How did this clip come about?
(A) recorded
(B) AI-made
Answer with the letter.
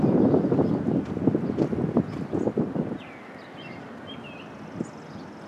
A